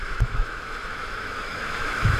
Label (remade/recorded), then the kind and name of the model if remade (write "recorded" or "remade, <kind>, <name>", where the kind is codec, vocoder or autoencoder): remade, autoencoder, DAC-VAE